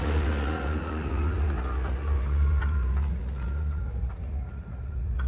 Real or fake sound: fake